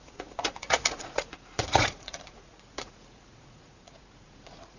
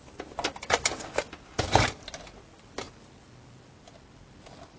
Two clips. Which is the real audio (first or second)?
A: second